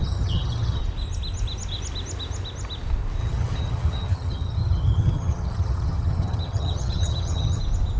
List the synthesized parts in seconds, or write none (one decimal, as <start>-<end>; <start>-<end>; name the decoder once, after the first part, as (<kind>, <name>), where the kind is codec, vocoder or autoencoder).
0.0-0.8 (vocoder, HiFi-GAN); 3.2-7.6